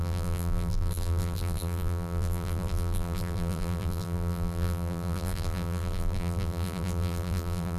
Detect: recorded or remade remade